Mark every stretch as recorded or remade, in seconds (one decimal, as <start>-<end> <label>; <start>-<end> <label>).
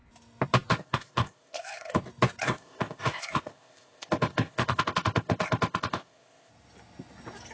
0.0-0.7 recorded; 0.7-2.0 remade; 2.0-2.4 recorded; 2.4-6.5 remade; 6.5-7.5 recorded